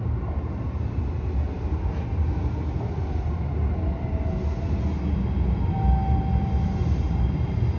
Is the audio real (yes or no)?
yes